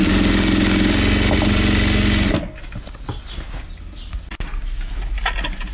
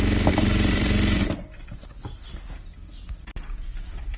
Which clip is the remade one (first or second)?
second